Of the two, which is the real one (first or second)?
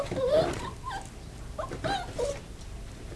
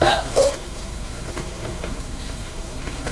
first